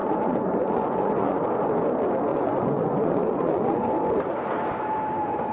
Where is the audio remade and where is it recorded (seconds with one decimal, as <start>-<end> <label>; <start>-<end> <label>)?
0.0-1.4 remade; 1.4-2.3 recorded; 2.3-3.9 remade; 3.9-5.5 recorded